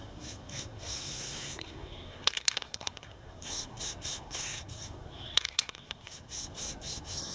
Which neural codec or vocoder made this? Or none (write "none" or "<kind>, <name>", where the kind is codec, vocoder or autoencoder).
codec, SNAC